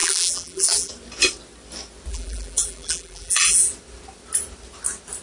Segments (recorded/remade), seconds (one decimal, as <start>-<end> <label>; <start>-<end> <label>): 0.0-0.9 remade; 0.9-2.1 recorded; 2.1-3.7 remade; 3.7-5.2 recorded